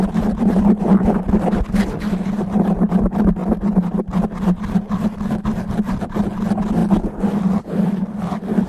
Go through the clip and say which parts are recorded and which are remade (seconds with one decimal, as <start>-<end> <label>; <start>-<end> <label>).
0.0-3.4 remade; 3.4-5.7 recorded; 5.7-6.8 remade; 6.8-7.6 recorded; 7.6-8.7 remade